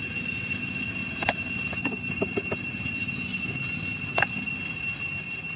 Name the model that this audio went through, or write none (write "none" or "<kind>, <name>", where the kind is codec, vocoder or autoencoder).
none